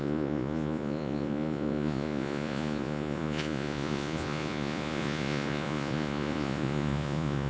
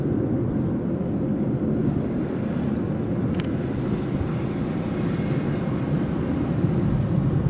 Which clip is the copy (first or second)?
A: first